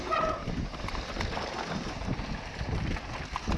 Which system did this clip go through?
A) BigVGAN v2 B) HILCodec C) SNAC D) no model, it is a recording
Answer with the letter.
D